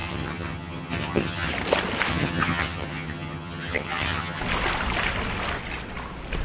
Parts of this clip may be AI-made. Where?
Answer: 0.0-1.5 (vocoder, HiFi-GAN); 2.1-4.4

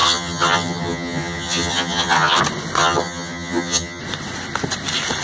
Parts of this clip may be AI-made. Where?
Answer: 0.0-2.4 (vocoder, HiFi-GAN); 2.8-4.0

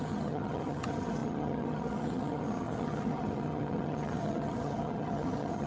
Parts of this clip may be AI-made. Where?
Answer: 0.0-5.7 (vocoder, HiFi-GAN)

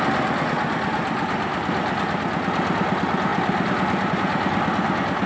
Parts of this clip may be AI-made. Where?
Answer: none